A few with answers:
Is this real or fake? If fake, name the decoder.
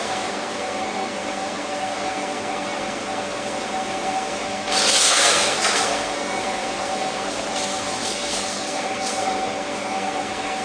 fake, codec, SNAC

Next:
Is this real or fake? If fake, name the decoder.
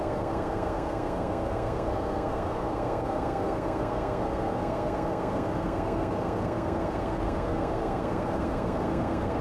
fake, codec, SNAC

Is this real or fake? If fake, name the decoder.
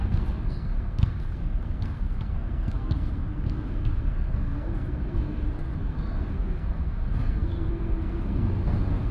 fake, codec, SNAC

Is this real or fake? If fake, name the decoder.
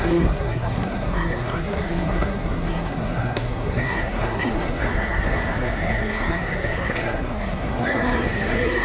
fake, codec, SNAC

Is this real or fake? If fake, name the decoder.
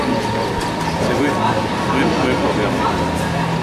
real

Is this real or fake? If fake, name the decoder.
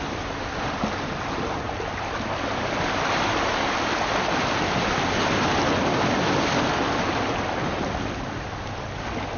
real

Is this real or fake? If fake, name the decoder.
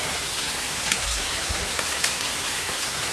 fake, codec, SNAC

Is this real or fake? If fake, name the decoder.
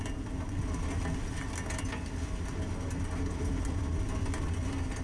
real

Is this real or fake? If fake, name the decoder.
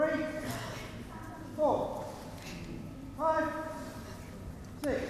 real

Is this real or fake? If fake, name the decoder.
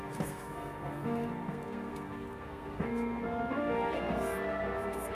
fake, codec, SNAC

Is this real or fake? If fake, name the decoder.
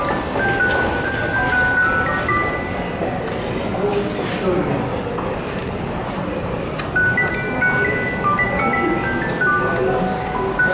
real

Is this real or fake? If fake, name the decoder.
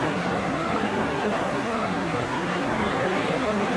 fake, codec, SNAC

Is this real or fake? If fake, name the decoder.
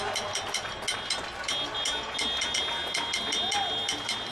real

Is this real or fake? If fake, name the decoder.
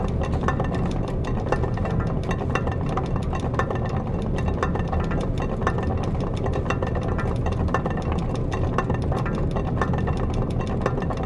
real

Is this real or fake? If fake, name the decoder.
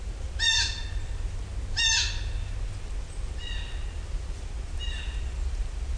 real